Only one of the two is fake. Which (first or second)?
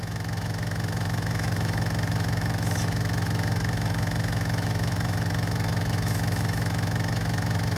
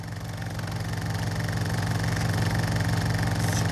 first